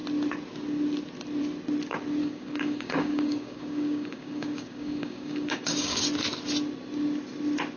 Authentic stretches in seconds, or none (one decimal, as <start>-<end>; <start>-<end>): 0.0-2.2; 6.0-7.8